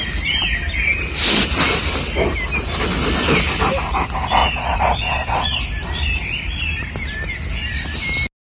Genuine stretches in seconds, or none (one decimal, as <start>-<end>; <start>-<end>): 0.0-4.4; 5.6-8.5

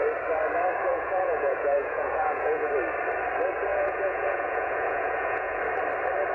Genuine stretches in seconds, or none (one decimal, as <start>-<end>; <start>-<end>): 0.0-0.9; 2.7-3.7; 5.6-6.3

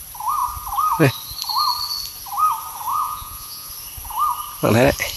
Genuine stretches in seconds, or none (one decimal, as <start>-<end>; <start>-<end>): 0.0-2.9; 3.7-5.2

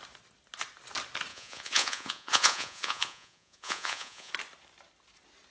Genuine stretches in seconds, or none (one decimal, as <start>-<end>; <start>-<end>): 0.0-1.3; 4.3-5.5

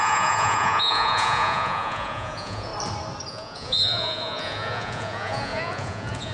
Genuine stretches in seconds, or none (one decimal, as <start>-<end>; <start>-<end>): 2.7-3.3

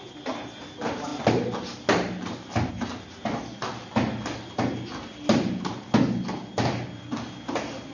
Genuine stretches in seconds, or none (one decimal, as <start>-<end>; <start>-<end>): 0.0-7.9

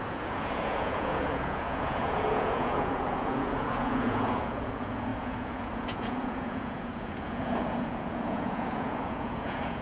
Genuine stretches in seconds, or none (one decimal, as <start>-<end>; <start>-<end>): none

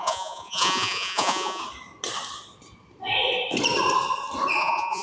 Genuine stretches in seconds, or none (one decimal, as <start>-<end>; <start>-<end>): 1.6-4.6